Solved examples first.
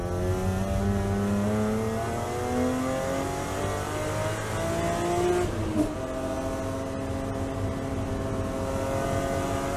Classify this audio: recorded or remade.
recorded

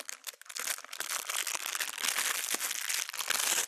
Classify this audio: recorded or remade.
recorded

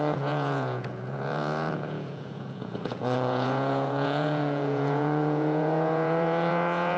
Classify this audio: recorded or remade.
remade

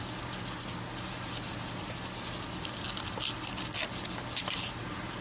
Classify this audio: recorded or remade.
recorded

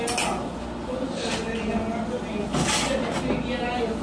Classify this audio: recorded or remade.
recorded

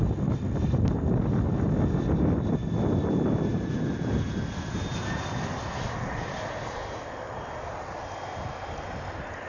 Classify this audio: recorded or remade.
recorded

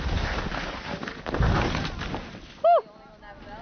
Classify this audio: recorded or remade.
recorded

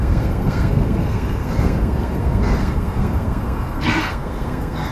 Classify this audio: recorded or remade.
remade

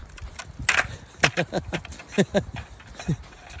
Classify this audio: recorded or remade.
recorded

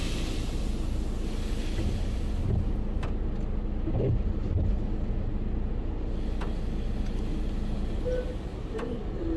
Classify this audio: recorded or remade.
recorded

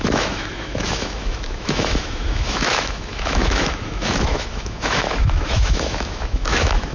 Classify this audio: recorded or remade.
remade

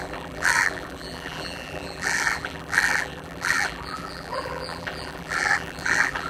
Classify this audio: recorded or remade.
remade